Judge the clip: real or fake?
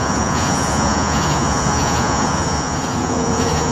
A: fake